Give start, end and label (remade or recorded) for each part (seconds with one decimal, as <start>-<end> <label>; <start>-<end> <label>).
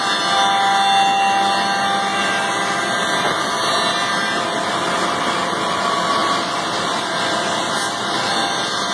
0.0-8.9 recorded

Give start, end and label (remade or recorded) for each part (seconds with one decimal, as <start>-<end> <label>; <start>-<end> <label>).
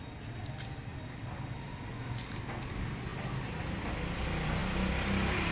0.0-5.5 recorded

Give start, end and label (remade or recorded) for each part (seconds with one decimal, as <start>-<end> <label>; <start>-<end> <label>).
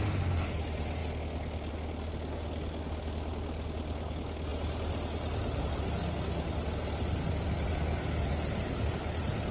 0.0-9.5 recorded